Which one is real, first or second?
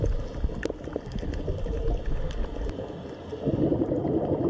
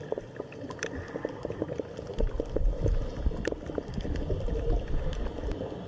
first